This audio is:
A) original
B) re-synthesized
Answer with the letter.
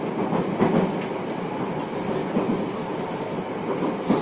A